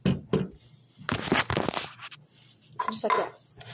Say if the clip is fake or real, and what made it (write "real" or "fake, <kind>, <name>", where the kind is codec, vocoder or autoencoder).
real